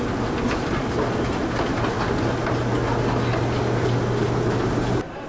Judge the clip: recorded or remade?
recorded